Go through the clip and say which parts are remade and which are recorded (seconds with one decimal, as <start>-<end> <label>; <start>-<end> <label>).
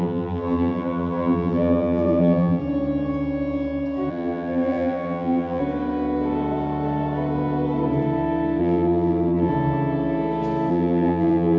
0.0-2.6 remade; 2.6-4.1 recorded; 4.1-5.6 remade; 5.6-8.6 recorded; 8.6-9.5 remade; 9.5-10.7 recorded; 10.7-11.6 remade